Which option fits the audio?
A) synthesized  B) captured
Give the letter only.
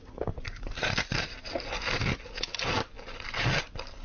B